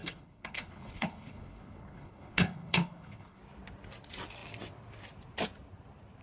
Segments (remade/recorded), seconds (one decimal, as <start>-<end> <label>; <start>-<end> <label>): 0.0-3.4 remade; 3.4-6.2 recorded